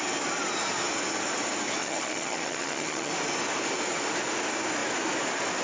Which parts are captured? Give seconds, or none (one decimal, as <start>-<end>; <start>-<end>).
0.0-1.8; 3.1-5.6